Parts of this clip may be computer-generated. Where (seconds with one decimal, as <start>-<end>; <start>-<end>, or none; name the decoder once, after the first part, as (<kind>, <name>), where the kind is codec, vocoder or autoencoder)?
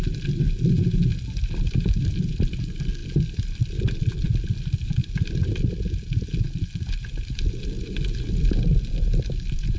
none